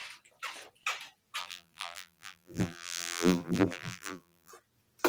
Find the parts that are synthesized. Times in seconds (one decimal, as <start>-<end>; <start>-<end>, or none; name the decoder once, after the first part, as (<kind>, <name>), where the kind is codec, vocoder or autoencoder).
1.4-4.5 (vocoder, BigVGAN v2)